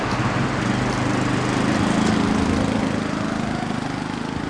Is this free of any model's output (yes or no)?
yes